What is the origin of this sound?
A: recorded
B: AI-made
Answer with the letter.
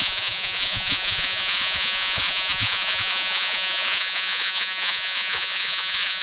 B